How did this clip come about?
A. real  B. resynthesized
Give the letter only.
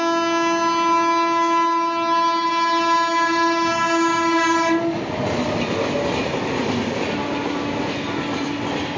A